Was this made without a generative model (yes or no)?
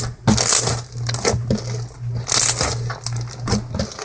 yes